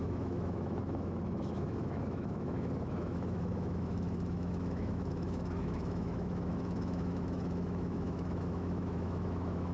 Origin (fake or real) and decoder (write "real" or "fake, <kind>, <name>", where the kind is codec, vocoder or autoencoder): fake, autoencoder, DAC-VAE